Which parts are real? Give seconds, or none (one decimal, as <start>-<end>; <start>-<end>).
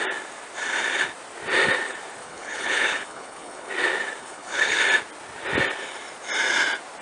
0.0-2.2; 3.7-4.2; 4.8-7.0